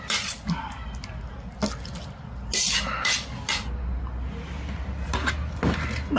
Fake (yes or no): no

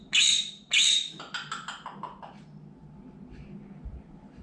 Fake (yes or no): no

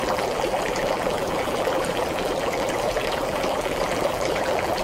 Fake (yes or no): yes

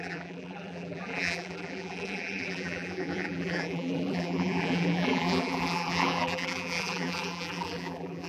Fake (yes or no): yes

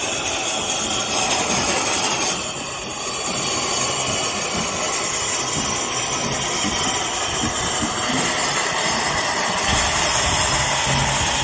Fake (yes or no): no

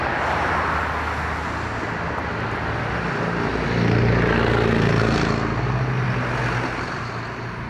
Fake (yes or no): no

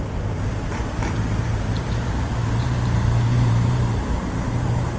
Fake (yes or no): yes